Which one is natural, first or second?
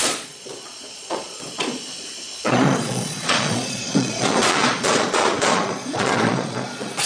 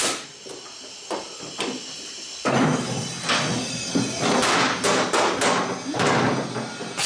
second